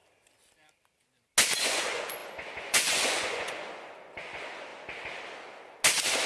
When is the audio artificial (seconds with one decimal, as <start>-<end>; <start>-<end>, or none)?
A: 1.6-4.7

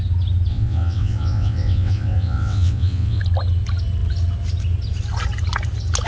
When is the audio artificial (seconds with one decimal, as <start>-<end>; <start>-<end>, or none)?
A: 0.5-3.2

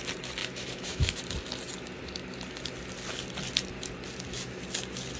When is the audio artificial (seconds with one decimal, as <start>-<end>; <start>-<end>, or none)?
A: 0.4-1.2

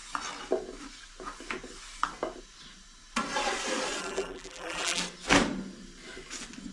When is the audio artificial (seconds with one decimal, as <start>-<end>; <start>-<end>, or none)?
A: 4.0-5.0

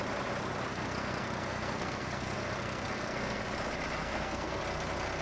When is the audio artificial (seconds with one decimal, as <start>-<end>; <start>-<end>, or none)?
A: 0.7-3.4; 4.0-4.6